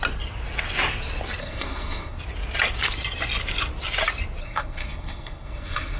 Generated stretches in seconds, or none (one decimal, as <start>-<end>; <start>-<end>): 1.4-2.2; 4.4-6.0